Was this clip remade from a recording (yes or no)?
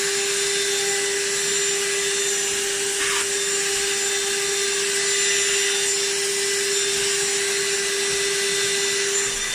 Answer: no